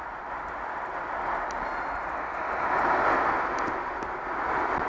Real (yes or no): yes